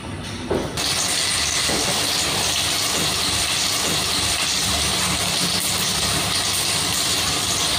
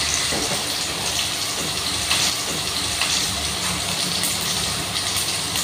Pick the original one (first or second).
first